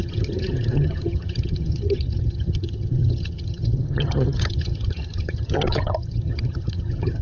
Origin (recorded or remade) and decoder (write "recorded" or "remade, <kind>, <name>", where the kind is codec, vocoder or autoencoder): remade, vocoder, HiFi-GAN